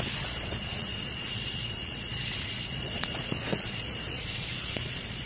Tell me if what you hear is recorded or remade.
remade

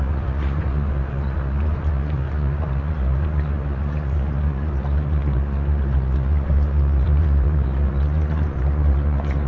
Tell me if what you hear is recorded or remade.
remade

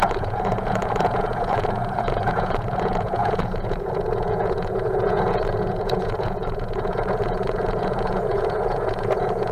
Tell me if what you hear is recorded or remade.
remade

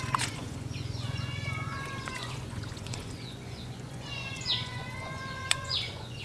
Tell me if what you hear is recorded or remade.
remade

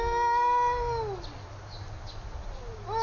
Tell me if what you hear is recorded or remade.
recorded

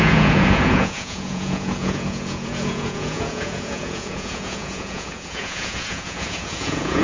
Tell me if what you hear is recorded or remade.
remade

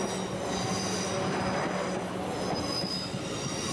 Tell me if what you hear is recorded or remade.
recorded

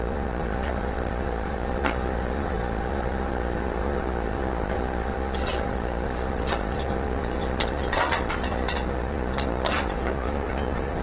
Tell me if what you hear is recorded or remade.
remade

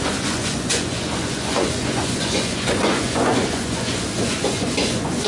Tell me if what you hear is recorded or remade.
remade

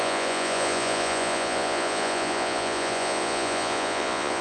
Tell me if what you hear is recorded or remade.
remade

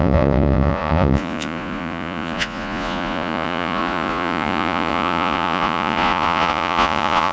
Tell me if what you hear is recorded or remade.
remade